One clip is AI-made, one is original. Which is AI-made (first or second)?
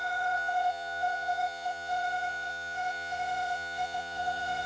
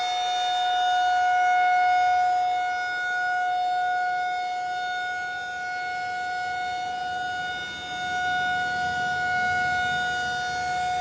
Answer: first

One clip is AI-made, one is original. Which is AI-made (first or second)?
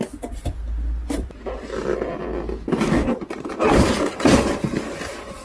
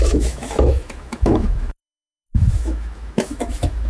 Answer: second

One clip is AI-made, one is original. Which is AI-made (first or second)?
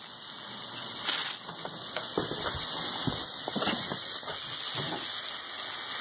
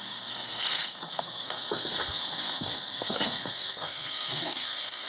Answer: second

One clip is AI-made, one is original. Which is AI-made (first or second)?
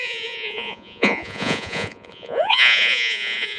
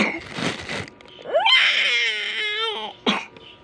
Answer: first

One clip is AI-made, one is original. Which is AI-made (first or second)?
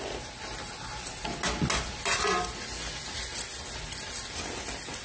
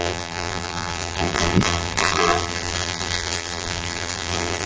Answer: second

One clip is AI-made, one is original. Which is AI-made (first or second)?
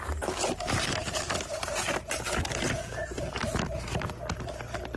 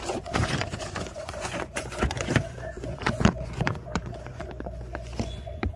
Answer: second